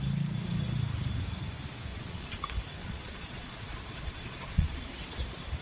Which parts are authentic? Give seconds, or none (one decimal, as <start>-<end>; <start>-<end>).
0.0-1.9; 2.4-2.8; 4.9-5.6